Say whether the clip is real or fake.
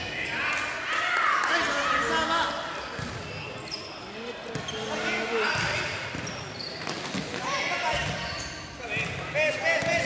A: real